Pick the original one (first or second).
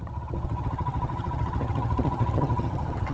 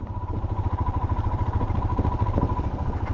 second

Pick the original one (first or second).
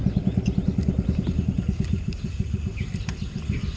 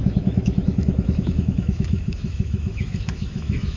first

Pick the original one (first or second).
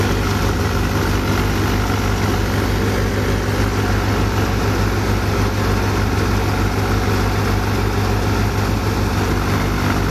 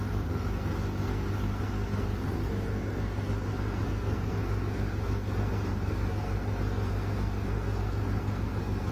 first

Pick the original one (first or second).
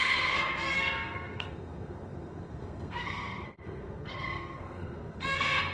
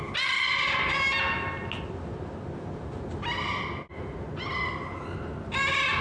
second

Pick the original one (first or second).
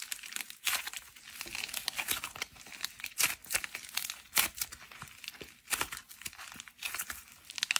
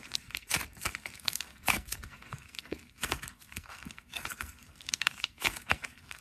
first